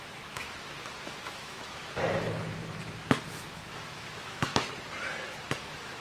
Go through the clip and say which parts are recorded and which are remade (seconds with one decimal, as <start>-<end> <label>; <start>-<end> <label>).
0.0-1.8 remade; 1.8-3.2 recorded; 3.2-4.5 remade; 4.5-5.6 recorded; 5.6-6.0 remade